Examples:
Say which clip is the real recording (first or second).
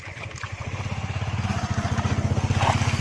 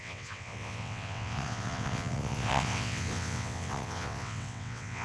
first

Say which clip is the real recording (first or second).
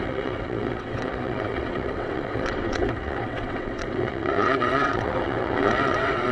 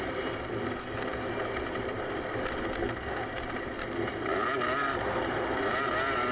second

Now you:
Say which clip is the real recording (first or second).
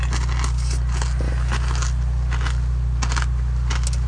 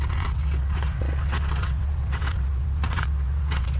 first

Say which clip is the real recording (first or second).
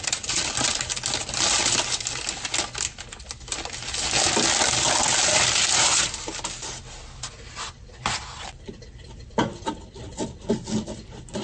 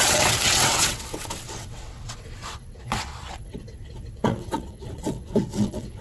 first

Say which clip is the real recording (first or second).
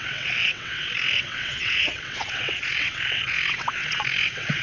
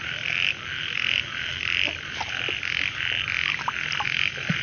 second